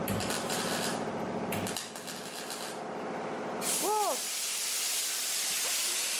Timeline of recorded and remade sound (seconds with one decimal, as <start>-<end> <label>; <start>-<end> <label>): 0.0-0.9 remade; 0.9-5.2 recorded; 5.2-5.8 remade; 5.8-6.2 recorded